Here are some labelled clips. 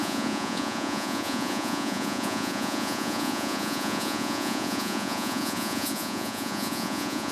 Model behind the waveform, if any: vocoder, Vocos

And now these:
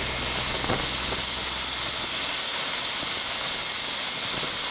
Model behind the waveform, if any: none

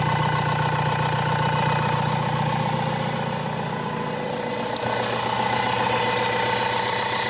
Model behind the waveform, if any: none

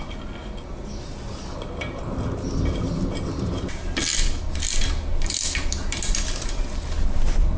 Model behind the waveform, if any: none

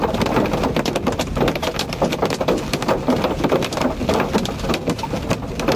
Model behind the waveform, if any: none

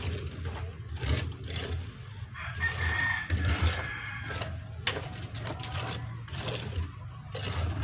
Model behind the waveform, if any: none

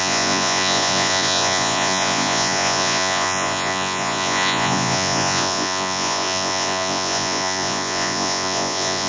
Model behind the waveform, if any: vocoder, Vocos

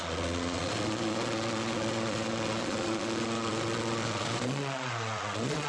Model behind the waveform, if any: vocoder, Vocos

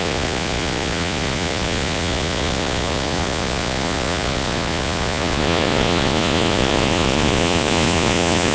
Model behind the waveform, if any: vocoder, Vocos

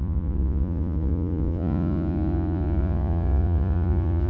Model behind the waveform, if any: vocoder, Vocos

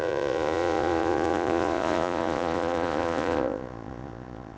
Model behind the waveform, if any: vocoder, Vocos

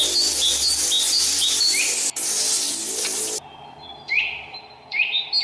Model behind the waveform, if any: none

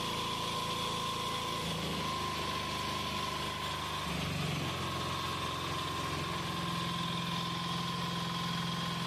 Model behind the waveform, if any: none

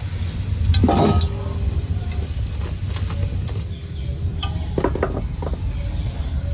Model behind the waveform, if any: none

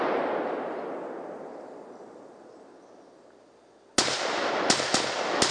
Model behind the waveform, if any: none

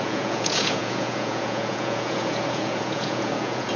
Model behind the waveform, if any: vocoder, Vocos